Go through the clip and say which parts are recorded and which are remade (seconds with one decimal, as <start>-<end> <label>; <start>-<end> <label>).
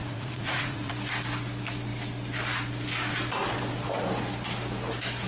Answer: 0.0-0.9 remade; 0.9-5.3 recorded